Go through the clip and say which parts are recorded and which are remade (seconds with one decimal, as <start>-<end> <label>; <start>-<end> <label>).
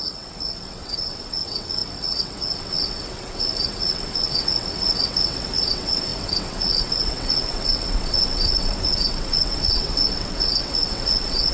0.0-11.5 remade